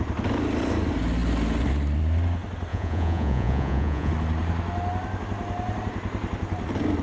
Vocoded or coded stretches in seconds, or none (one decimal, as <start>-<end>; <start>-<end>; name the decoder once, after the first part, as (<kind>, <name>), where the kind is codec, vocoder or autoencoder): 2.7-4.1 (vocoder, Vocos)